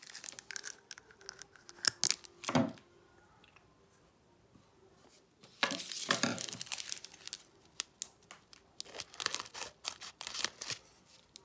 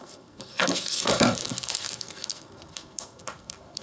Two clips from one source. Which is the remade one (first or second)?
second